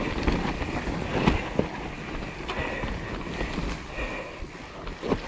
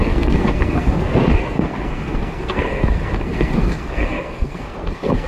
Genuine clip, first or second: first